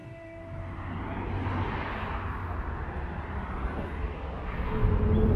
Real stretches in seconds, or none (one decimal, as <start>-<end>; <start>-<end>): 0.0-5.4